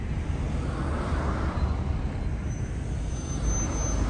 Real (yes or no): yes